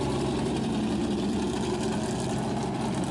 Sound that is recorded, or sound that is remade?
recorded